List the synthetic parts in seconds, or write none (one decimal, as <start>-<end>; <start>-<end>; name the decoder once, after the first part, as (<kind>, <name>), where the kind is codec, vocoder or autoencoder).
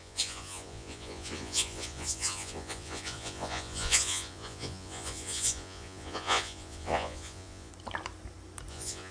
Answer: 0.0-7.7 (vocoder, Vocos); 8.7-9.1